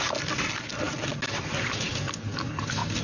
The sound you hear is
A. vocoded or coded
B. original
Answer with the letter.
B